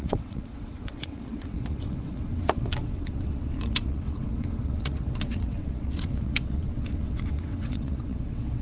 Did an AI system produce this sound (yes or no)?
yes